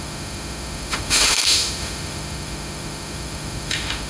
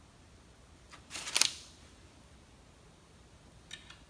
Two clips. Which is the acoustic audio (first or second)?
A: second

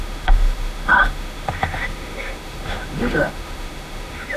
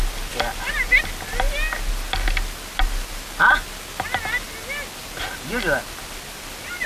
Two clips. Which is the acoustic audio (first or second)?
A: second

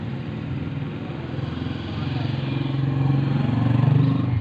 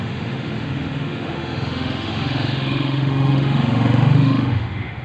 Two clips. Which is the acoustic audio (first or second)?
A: first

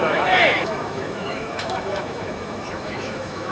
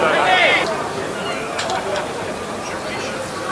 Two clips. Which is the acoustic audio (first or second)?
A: second